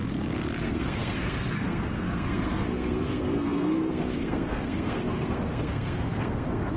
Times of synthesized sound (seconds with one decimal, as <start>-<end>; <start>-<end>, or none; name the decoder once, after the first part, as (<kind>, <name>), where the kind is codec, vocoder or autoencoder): 0.6-6.8 (codec, SNAC)